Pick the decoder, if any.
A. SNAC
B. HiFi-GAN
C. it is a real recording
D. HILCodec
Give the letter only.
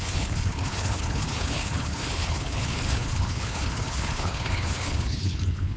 D